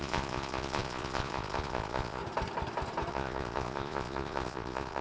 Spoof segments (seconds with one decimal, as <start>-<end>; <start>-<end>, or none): 0.0-2.2; 3.1-5.0